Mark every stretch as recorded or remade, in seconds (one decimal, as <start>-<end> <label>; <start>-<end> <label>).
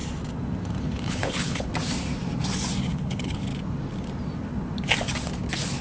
0.0-0.8 recorded; 0.8-1.7 remade; 1.7-2.9 recorded; 2.9-3.5 remade; 3.5-5.8 recorded